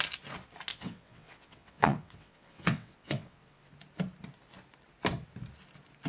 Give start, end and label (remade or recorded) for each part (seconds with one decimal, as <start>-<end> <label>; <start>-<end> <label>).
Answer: 0.0-0.7 recorded; 0.7-3.7 remade; 3.7-6.1 recorded